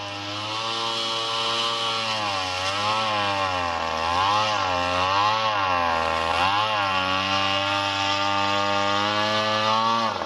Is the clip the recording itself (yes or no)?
yes